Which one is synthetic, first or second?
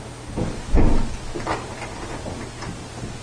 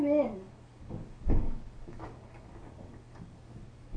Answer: second